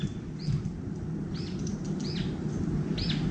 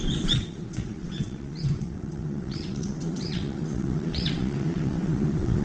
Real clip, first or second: first